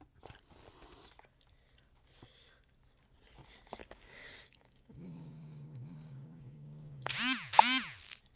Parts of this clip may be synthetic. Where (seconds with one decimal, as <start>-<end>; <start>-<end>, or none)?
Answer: 3.8-7.1